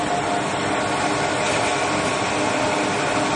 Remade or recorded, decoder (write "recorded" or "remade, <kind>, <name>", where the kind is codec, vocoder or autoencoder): recorded